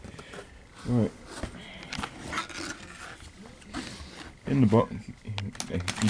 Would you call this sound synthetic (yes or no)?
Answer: no